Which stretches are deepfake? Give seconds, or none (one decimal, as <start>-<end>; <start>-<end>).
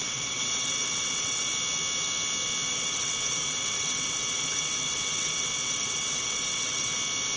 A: 0.0-1.5; 2.7-6.9